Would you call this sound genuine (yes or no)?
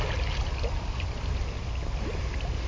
yes